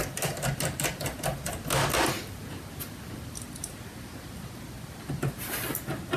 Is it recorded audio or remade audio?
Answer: recorded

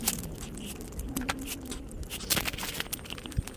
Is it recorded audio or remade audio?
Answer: recorded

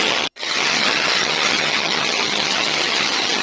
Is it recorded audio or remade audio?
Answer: remade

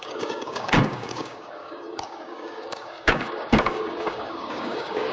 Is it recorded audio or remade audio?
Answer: remade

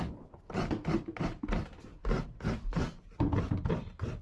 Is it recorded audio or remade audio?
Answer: recorded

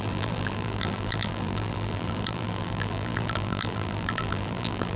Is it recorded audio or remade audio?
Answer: remade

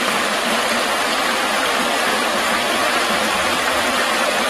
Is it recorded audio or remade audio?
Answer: recorded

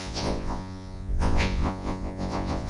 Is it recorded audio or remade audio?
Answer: remade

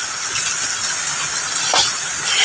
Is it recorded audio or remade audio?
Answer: recorded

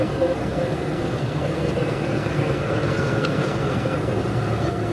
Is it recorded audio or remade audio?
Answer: remade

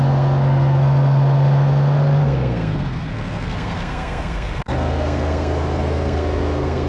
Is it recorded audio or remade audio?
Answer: remade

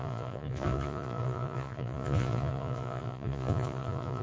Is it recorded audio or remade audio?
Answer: remade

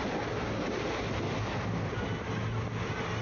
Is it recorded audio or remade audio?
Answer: recorded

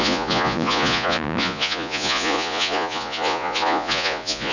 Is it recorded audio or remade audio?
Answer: remade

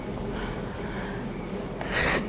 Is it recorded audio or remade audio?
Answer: remade